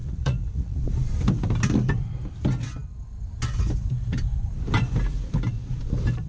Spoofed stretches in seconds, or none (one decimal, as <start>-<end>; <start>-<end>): 0.0-0.8